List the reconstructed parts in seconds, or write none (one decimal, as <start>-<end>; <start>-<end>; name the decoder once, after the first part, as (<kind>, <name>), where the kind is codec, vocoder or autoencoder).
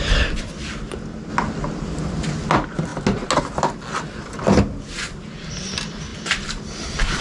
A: 6.1-7.2 (vocoder, BigVGAN v2)